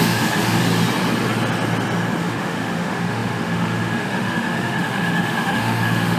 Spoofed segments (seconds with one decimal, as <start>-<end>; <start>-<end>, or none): 0.0-0.6; 2.2-6.2